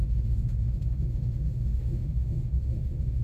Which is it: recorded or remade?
remade